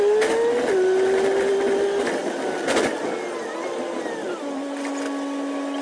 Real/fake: real